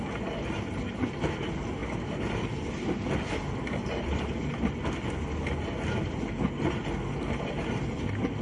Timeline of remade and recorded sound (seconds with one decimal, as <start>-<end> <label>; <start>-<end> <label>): 0.0-8.4 recorded